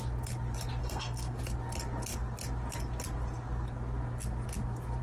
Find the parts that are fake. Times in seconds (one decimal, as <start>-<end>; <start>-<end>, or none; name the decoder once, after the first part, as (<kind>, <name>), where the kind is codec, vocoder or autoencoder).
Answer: 0.8-1.4 (codec, SNAC)